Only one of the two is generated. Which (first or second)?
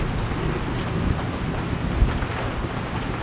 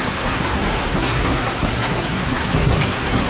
second